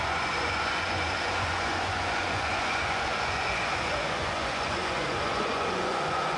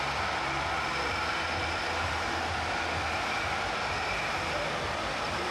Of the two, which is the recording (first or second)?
second